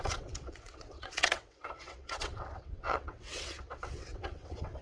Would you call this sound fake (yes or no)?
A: yes